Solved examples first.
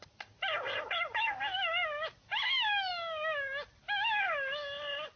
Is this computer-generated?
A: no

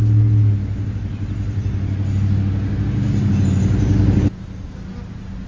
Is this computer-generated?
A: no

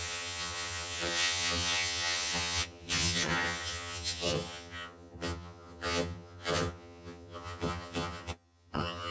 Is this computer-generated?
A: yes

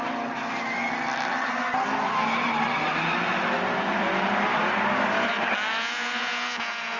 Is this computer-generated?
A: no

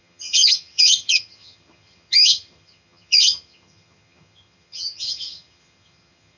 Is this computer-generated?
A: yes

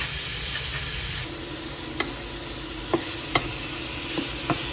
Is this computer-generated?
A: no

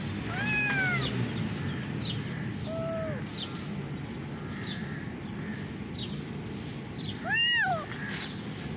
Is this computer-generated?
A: no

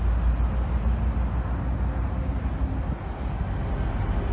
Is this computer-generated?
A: no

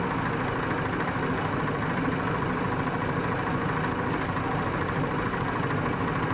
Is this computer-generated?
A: no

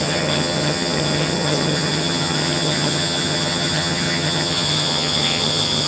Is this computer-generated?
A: yes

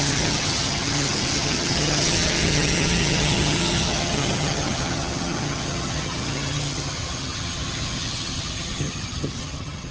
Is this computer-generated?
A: yes